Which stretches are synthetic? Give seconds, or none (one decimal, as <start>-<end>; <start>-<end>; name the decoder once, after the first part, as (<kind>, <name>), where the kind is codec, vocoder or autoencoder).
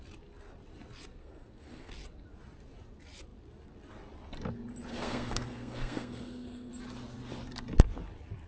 1.2-1.9 (codec, SNAC); 4.9-6.7